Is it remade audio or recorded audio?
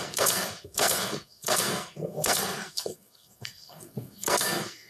remade